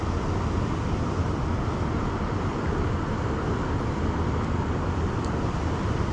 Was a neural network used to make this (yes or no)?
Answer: no